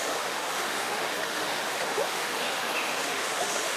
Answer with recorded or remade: remade